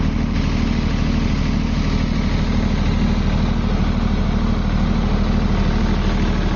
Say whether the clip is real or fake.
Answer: real